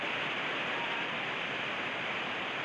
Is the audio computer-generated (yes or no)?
yes